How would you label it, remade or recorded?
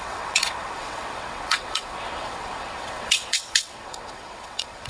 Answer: remade